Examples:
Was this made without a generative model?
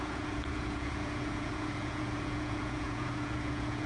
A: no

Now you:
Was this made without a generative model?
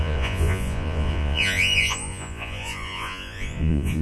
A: no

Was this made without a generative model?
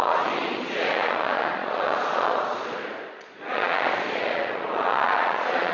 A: no